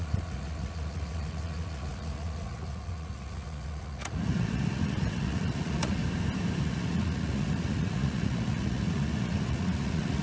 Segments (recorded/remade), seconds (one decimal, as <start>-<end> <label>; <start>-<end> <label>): 0.0-6.0 remade; 6.0-6.6 recorded; 6.6-10.2 remade